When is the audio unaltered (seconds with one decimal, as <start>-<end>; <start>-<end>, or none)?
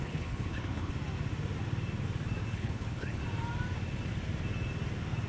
0.9-2.5; 3.2-5.3